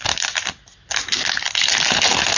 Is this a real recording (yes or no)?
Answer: yes